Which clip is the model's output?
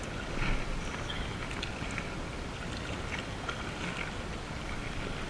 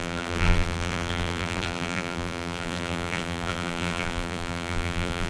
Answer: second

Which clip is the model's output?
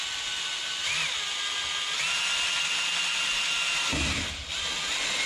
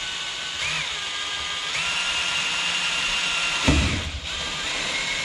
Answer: second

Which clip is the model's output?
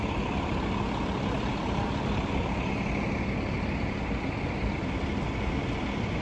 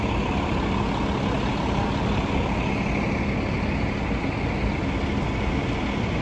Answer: first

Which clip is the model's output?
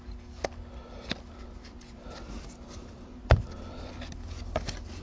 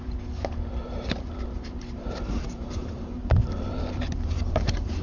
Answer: second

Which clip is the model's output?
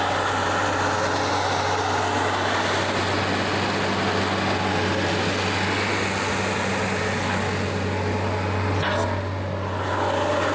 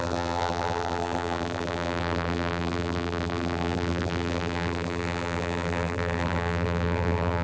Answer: second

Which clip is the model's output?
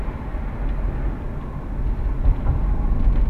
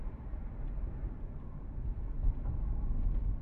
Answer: second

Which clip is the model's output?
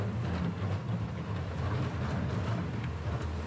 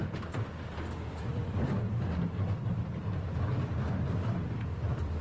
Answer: second